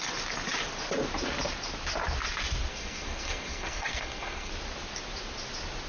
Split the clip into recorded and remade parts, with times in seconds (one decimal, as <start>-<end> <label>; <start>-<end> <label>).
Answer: 0.0-2.7 recorded; 2.7-4.5 remade; 4.5-5.9 recorded